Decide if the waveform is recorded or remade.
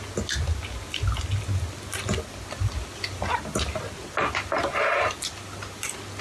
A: recorded